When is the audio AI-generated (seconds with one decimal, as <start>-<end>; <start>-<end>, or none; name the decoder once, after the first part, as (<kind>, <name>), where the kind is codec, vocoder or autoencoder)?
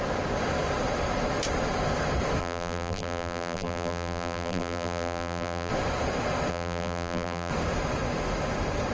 2.4-5.7 (vocoder, BigVGAN v2); 6.5-7.5